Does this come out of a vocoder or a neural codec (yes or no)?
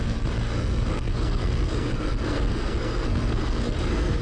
yes